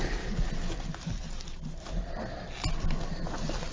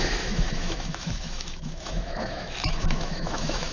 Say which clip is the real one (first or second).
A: first